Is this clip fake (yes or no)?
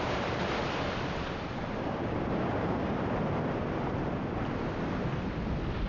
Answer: no